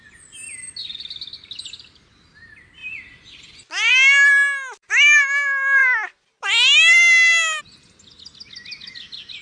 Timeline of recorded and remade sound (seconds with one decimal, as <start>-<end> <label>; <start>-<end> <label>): 0.0-9.4 recorded